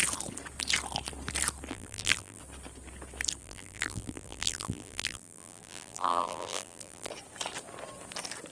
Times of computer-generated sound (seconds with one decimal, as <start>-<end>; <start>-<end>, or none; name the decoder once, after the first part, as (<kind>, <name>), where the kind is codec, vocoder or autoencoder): 1.7-2.4 (vocoder, BigVGAN v2); 3.4-7.1